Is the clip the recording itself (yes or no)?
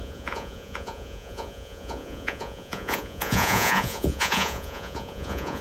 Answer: no